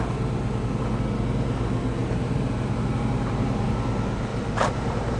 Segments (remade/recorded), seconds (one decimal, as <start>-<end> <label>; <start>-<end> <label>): 0.0-2.0 recorded; 2.0-3.7 remade; 3.7-4.3 recorded; 4.3-5.2 remade